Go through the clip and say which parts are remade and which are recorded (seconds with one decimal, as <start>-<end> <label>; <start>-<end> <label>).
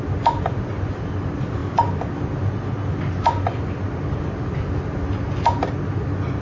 0.0-6.4 recorded